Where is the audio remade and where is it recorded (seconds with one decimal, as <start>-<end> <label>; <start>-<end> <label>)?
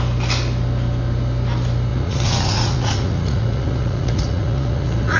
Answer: 0.0-1.9 recorded; 1.9-5.2 remade